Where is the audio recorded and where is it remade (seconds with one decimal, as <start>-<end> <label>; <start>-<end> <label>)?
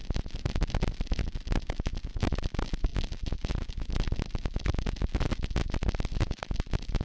0.0-7.0 recorded